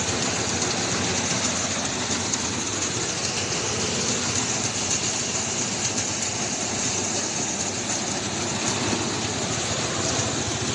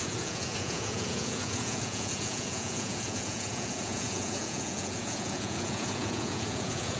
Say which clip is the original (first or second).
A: first